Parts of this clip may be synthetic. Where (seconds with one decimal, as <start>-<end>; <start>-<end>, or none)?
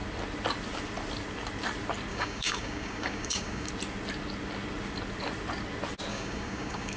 2.1-3.7; 6.1-7.0